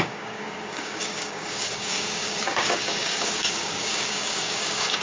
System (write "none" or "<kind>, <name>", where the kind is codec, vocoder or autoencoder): codec, DAC